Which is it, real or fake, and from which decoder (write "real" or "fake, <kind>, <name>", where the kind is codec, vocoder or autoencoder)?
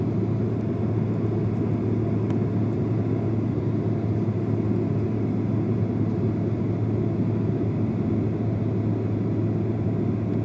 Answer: real